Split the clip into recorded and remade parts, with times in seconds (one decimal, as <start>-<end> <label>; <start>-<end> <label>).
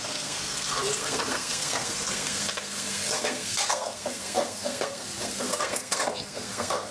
0.0-6.9 remade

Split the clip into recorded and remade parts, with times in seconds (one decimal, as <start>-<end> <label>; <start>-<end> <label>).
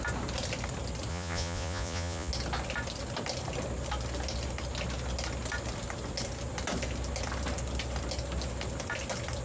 0.0-1.1 recorded; 1.1-2.3 remade; 2.3-9.4 recorded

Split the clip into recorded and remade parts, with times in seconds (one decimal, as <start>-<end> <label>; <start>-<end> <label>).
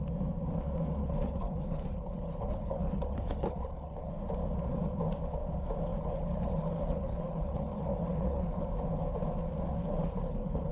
0.0-1.0 recorded; 1.0-4.1 remade; 4.1-5.9 recorded; 5.9-8.6 remade; 8.6-9.8 recorded; 9.8-10.7 remade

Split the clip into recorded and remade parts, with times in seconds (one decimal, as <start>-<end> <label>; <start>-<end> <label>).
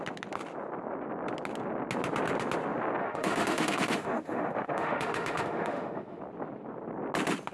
0.0-3.0 recorded; 3.0-6.2 remade; 6.2-7.5 recorded